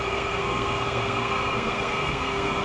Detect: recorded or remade remade